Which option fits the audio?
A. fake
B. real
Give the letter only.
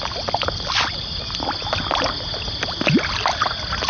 B